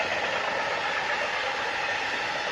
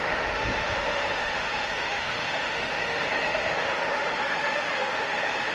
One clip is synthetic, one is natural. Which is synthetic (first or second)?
second